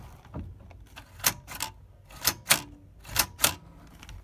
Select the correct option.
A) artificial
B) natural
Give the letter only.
B